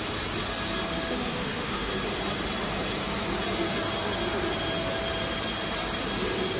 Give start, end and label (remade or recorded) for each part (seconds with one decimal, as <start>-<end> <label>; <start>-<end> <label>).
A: 0.0-0.9 recorded; 0.9-1.9 remade; 1.9-6.6 recorded